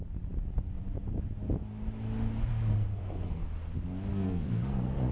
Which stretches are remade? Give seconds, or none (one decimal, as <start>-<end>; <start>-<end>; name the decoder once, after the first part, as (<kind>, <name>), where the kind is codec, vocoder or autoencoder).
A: 2.5-3.4 (codec, SNAC); 4.1-5.1